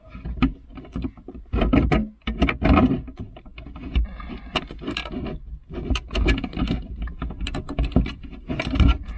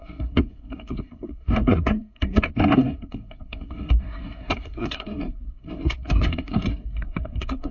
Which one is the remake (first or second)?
second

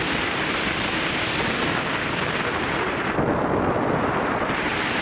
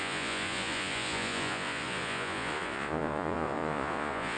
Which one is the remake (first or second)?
second